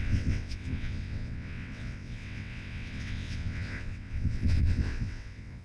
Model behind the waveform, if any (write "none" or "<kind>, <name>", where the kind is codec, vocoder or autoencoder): vocoder, WaveNeXt